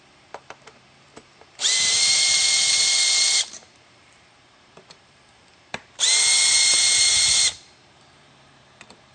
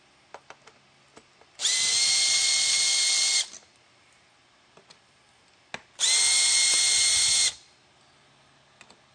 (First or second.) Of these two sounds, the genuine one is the second